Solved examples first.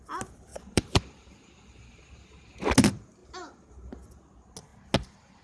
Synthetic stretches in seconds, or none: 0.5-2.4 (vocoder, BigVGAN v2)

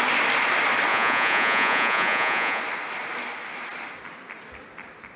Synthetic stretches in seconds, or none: 0.9-2.6 (vocoder, Vocos)

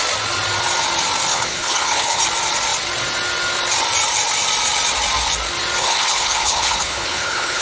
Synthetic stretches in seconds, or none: 1.3-2.2 (codec, HILCodec); 5.8-7.6

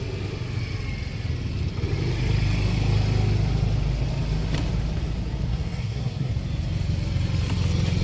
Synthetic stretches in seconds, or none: 5.5-6.3 (codec, SNAC)

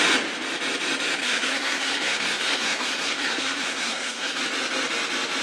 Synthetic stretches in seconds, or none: 1.2-4.4 (codec, SNAC)

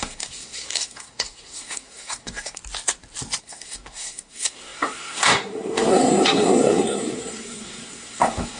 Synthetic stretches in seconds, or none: 0.0-2.6 (codec, SNAC); 3.4-8.6

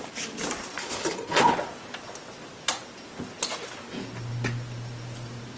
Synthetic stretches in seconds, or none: 0.8-1.4 (codec, HILCodec)